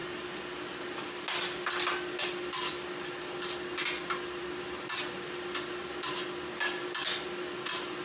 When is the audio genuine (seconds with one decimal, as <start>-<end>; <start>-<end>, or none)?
0.0-8.0